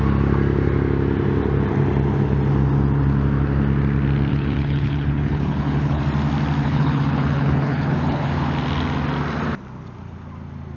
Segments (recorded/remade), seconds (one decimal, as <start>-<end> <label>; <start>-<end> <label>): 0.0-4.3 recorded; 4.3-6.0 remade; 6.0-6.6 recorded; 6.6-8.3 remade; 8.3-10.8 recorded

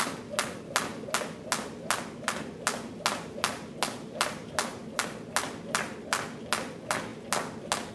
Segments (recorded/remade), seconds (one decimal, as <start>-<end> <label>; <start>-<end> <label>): 0.0-7.9 recorded

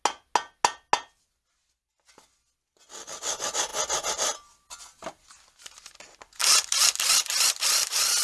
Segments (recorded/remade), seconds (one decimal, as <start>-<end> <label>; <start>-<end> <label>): 0.0-8.2 recorded